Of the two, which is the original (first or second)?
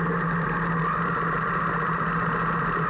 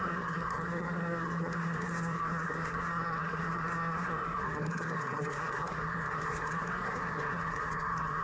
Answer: first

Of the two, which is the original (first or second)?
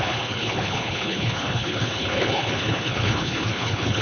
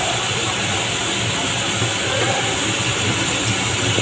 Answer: second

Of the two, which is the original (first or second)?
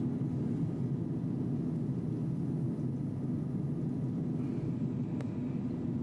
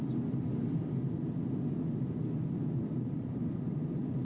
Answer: first